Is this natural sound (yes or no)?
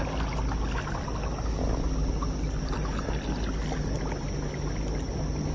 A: yes